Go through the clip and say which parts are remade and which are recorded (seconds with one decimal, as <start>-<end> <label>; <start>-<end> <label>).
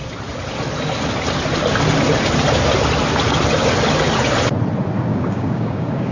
0.0-5.1 recorded; 5.1-6.1 remade